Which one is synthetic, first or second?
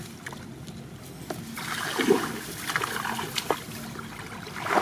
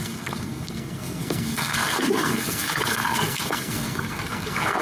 second